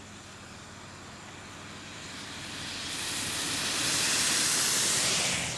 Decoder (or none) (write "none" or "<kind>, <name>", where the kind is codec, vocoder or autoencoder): vocoder, BigVGAN v2